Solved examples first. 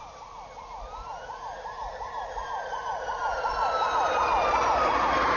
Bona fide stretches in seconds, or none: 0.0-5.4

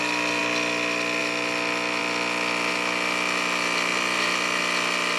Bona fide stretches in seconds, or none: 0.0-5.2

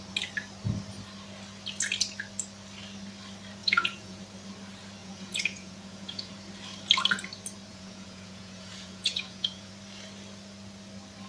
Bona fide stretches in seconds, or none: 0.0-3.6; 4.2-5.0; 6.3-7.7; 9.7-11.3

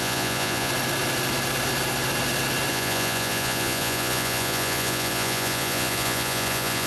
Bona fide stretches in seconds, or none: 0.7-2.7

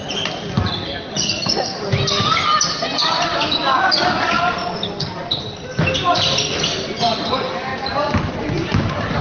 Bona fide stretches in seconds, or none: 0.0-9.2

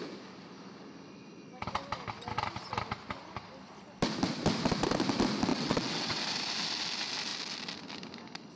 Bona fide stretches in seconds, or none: 0.0-5.5; 6.2-8.6

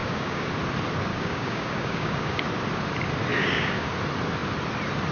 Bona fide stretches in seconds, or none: 0.5-1.1; 2.5-3.3; 3.9-5.1